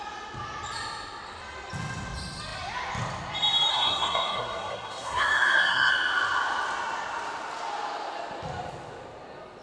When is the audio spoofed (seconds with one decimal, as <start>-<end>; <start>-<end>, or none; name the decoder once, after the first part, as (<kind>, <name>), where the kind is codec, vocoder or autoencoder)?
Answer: 3.7-5.9 (codec, SNAC)